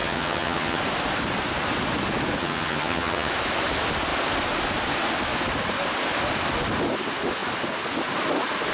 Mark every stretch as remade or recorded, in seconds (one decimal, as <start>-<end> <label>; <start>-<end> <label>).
0.0-0.8 remade; 0.8-2.4 recorded; 2.4-3.3 remade; 3.3-8.7 recorded